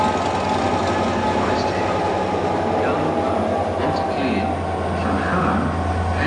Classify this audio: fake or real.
real